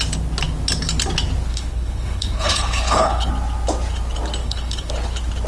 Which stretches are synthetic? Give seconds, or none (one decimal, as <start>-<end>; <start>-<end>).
1.5-3.3; 4.4-4.9